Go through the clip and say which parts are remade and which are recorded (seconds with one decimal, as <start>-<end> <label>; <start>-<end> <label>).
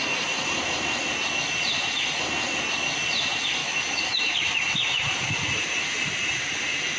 0.0-3.6 recorded; 3.6-4.3 remade; 4.3-7.0 recorded